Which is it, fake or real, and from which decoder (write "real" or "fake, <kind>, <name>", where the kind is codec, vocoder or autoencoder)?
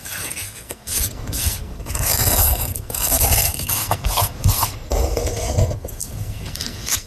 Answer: fake, codec, SNAC